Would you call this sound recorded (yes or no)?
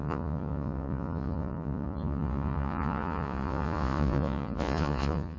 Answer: no